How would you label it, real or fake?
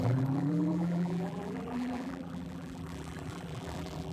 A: fake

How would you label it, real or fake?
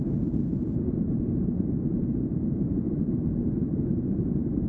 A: fake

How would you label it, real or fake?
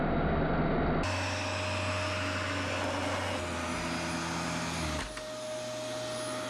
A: real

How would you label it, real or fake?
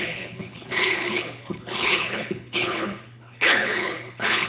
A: fake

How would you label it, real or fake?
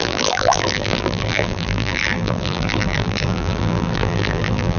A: fake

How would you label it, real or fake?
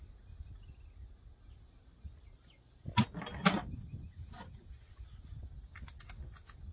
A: real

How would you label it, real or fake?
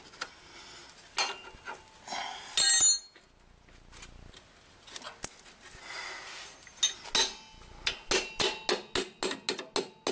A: real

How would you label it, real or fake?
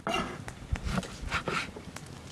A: real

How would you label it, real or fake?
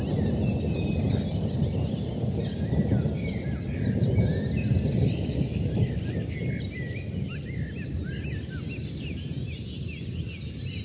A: real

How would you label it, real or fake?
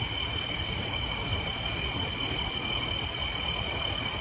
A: real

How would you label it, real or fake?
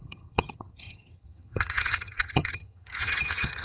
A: fake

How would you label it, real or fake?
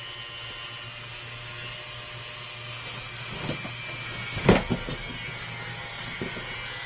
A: real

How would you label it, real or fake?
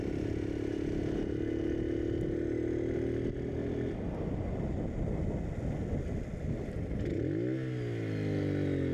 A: real